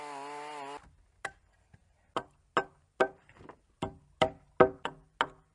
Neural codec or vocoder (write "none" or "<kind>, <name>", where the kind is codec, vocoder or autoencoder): none